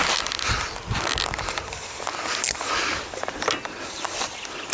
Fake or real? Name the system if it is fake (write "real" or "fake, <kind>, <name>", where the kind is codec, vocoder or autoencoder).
real